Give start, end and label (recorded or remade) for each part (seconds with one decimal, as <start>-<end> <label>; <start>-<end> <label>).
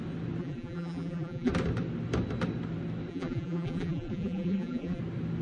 0.0-0.4 recorded; 0.4-1.5 remade; 1.5-3.1 recorded; 3.1-5.0 remade; 5.0-5.4 recorded